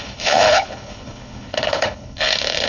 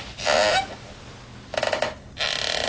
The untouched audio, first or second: second